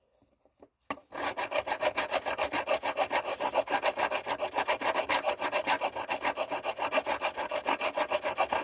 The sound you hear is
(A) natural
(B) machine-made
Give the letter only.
A